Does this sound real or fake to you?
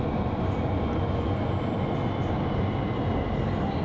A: real